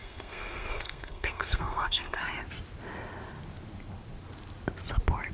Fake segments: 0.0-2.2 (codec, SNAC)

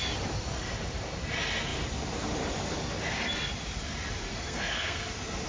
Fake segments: 4.3-5.0 (codec, SNAC)